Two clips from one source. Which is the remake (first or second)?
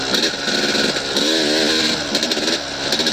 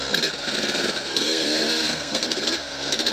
second